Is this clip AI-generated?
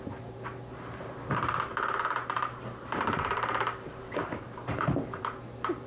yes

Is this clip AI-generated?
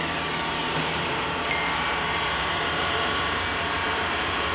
yes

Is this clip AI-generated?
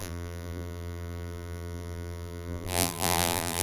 yes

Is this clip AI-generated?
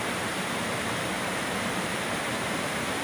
yes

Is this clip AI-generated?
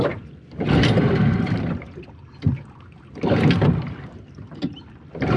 no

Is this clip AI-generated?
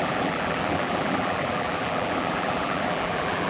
yes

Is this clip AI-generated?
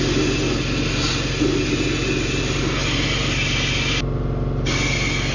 no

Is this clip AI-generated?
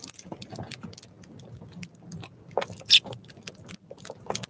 no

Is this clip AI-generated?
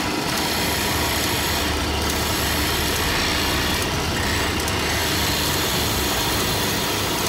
no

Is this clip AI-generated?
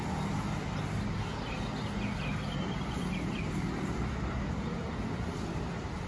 no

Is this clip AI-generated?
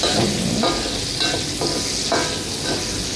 no